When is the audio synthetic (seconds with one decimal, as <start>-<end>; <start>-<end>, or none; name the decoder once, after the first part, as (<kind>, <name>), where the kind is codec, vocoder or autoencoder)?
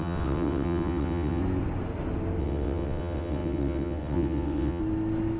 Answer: 0.0-1.4 (vocoder, WaveNeXt); 2.4-4.8